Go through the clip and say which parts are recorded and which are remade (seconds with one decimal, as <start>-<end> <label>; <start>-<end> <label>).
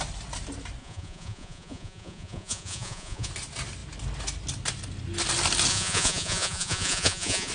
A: 0.0-0.8 recorded; 0.8-3.3 remade; 3.3-5.7 recorded; 5.7-7.5 remade